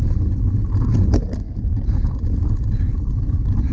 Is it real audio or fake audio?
real